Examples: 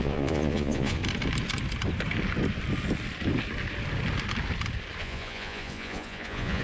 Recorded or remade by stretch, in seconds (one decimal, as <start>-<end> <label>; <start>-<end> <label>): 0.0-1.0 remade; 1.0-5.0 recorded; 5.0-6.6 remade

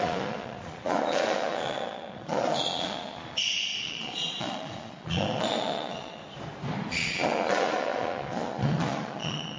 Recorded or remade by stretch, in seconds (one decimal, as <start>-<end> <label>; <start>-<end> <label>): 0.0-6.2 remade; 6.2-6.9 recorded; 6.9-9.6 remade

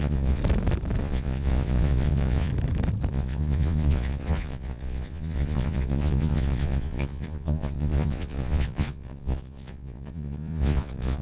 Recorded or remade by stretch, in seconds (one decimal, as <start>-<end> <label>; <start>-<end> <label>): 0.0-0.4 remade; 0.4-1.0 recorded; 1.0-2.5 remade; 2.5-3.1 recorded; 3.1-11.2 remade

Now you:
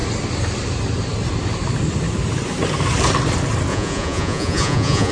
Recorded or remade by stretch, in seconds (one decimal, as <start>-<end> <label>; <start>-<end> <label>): 0.0-3.7 recorded; 3.7-5.1 remade

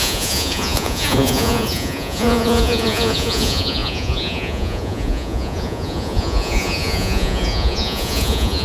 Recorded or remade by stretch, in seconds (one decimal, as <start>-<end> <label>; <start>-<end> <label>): 0.0-8.6 remade